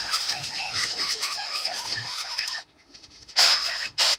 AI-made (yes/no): yes